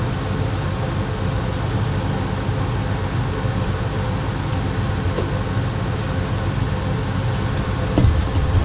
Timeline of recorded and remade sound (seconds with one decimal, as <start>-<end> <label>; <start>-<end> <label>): 0.0-8.6 recorded